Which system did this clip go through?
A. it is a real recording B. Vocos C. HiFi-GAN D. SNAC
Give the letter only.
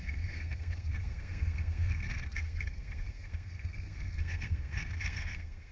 D